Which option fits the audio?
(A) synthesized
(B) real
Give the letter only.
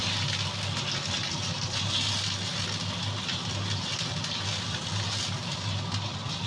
B